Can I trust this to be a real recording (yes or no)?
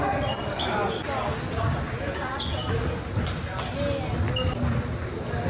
yes